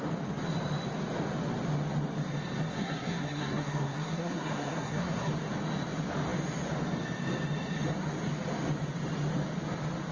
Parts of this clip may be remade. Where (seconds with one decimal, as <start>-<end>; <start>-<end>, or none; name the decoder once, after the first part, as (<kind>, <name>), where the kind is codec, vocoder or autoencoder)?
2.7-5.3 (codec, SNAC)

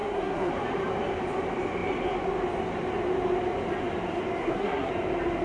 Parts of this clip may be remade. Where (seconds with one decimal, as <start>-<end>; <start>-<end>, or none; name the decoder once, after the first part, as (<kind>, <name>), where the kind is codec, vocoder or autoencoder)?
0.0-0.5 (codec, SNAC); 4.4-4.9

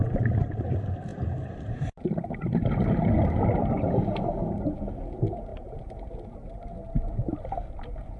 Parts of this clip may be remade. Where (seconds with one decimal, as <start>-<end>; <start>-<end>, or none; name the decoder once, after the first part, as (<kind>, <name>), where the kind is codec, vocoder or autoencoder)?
none